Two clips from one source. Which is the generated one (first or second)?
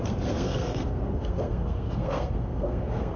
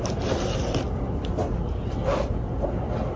first